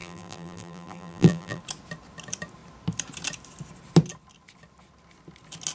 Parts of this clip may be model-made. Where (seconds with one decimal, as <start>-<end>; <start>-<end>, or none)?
0.0-1.6